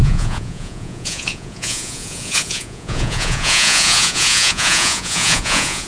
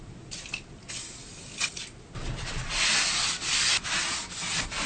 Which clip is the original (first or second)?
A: second